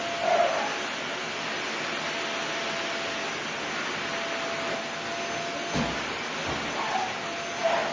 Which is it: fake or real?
real